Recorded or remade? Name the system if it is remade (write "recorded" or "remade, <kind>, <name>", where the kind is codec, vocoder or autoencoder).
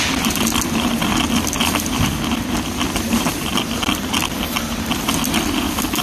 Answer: remade, vocoder, BigVGAN v2